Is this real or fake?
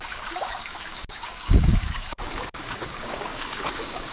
fake